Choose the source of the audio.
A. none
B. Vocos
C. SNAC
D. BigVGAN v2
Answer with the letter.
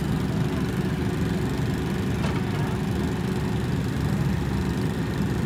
A